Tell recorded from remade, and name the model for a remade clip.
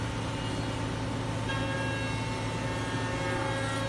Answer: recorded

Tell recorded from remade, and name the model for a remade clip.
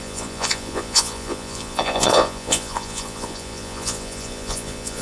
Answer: remade, vocoder, Vocos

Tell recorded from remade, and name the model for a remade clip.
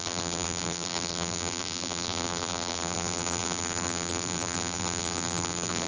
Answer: remade, vocoder, BigVGAN v2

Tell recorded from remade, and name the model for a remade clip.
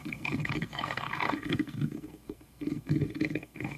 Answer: remade, codec, SNAC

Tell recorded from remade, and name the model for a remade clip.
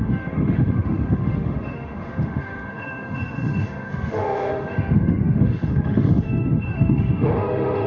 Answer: remade, autoencoder, DAC-VAE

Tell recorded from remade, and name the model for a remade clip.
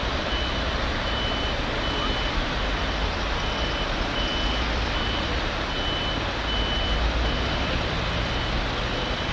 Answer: recorded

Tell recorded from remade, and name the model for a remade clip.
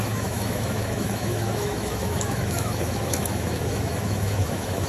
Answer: remade, autoencoder, DAC-VAE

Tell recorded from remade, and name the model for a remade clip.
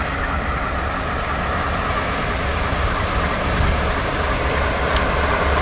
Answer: recorded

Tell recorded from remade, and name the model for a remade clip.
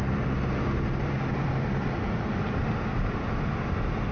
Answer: recorded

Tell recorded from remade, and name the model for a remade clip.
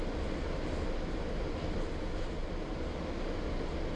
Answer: recorded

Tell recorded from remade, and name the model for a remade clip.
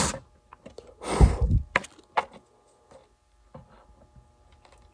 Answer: recorded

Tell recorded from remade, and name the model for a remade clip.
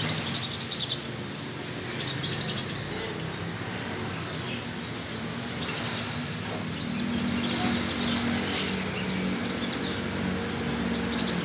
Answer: recorded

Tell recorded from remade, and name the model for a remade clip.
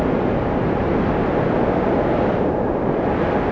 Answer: recorded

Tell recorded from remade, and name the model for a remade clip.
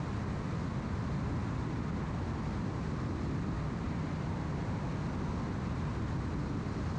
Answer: recorded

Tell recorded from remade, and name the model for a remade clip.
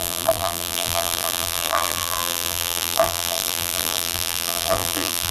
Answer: remade, vocoder, BigVGAN v2